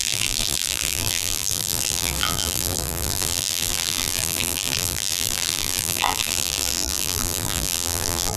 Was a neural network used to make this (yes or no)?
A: yes